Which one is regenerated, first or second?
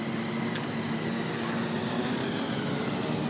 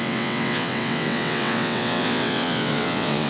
second